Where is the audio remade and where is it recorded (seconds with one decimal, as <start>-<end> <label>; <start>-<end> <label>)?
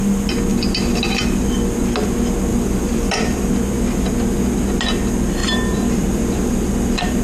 0.0-0.5 recorded; 0.5-1.0 remade; 1.0-2.5 recorded; 2.5-3.5 remade; 3.5-5.4 recorded; 5.4-7.2 remade